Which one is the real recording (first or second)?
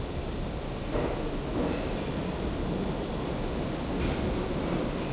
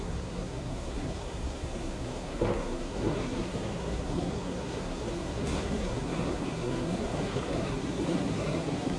first